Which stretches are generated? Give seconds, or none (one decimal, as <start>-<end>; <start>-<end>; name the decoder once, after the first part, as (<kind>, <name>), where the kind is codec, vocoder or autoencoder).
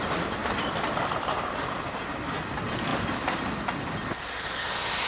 none